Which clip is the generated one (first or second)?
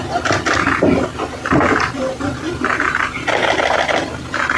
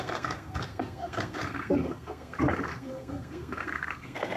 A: second